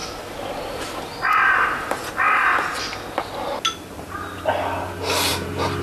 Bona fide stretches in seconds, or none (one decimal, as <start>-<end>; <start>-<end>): 0.0-1.2; 2.0-5.3